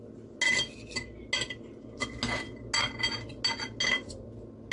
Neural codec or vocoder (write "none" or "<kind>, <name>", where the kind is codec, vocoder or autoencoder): none